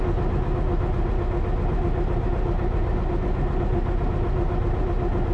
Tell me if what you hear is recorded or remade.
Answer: recorded